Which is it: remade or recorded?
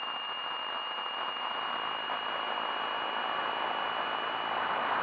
recorded